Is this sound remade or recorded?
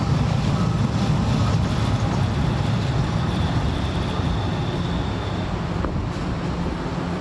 recorded